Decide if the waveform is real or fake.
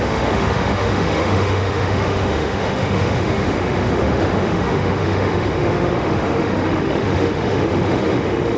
fake